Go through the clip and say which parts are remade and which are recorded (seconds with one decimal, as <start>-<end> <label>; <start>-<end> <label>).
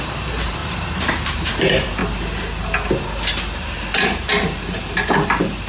0.0-0.6 remade; 0.6-1.1 recorded; 1.1-2.0 remade; 2.0-5.7 recorded